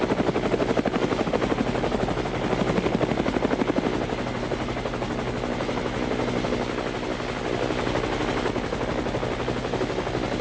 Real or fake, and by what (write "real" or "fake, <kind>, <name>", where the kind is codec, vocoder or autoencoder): real